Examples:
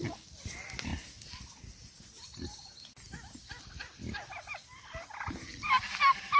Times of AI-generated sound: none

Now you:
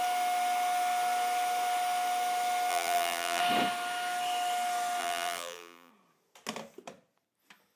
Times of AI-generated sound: 2.7-3.4 (vocoder, BigVGAN v2); 5.0-5.9

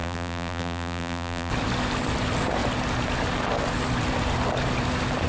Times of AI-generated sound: 0.0-1.5 (vocoder, BigVGAN v2)

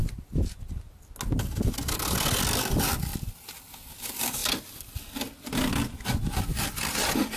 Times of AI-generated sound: none

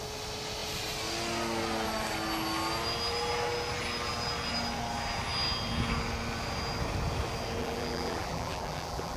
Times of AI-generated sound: 7.6-9.2 (vocoder, BigVGAN v2)

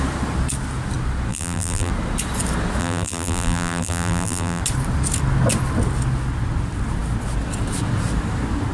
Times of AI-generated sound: 1.3-1.9 (vocoder, BigVGAN v2); 2.8-4.6

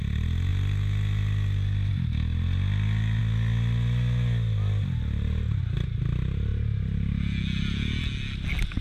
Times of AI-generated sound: 0.5-1.9 (vocoder, BigVGAN v2)

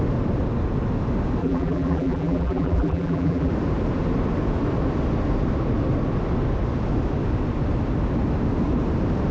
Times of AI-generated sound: 1.4-3.5 (vocoder, BigVGAN v2)